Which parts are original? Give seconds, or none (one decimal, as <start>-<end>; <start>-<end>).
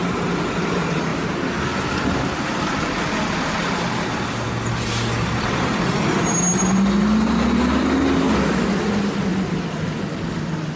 0.0-1.1; 1.6-10.8